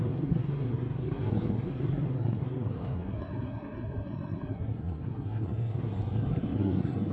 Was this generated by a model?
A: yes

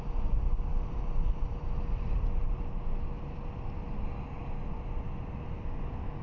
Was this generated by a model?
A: no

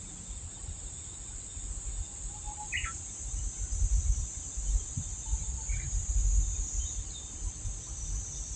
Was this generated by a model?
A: no